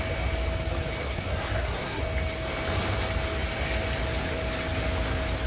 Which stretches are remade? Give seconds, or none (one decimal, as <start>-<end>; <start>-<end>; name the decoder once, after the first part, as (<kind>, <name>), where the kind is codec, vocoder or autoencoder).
1.0-2.0 (codec, SNAC)